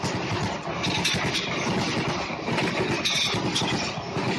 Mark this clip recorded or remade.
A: recorded